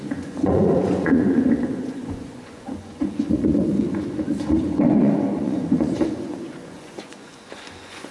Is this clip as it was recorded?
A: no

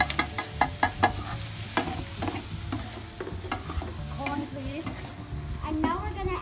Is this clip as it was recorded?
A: yes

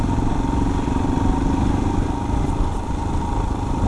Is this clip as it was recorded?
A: yes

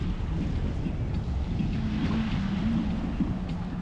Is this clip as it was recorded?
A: yes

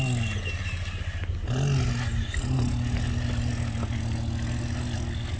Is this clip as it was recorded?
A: yes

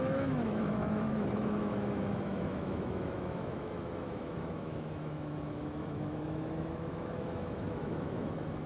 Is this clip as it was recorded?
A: no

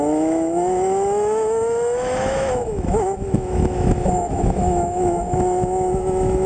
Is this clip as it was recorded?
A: no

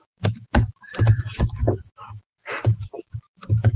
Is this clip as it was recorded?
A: no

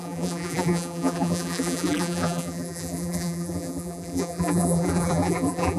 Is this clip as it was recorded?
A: no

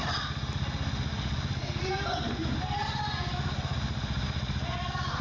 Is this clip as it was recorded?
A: yes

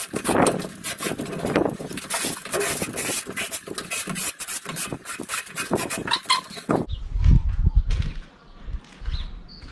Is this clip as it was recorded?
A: yes